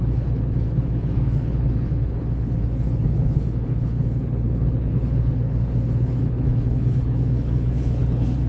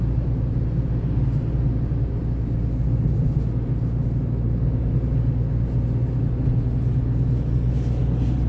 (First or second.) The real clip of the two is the second